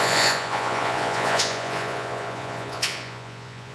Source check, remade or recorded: remade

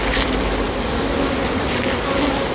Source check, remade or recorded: recorded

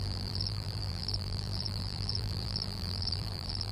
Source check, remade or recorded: remade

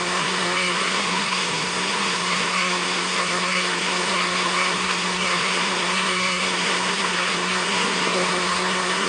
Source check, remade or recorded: remade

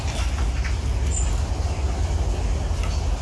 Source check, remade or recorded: recorded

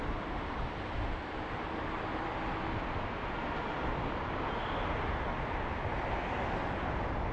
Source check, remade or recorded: recorded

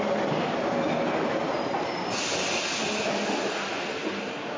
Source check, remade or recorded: recorded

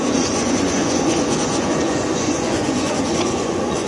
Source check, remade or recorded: remade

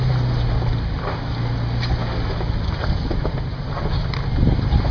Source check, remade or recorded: recorded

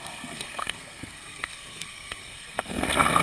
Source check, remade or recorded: remade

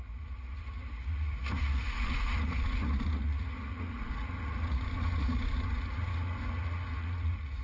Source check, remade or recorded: remade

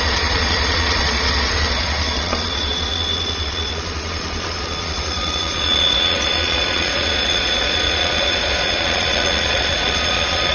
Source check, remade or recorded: remade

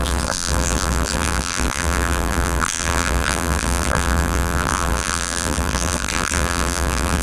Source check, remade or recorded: remade